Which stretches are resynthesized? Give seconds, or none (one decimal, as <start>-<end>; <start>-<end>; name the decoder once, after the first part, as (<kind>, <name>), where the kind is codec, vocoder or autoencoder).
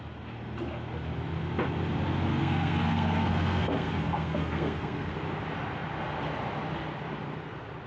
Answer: 2.3-5.1 (codec, SNAC)